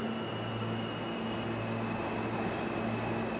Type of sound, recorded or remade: recorded